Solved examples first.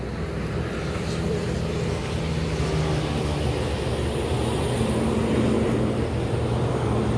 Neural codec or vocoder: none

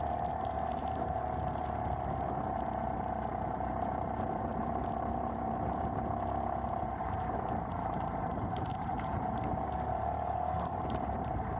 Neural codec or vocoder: vocoder, BigVGAN v2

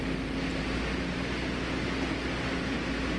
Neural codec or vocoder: none